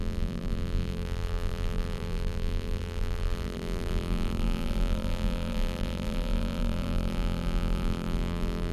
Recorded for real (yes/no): no